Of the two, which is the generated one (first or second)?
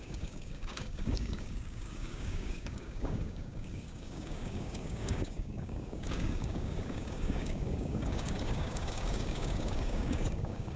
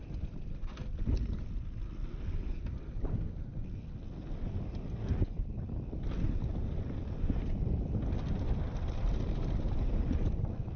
first